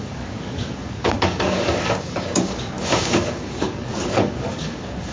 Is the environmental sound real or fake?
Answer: fake